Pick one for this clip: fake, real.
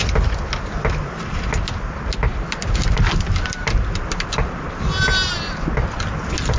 real